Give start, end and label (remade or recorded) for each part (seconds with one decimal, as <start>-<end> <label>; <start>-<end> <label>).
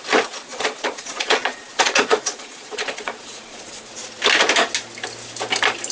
0.0-0.5 recorded; 0.5-3.9 remade; 3.9-5.9 recorded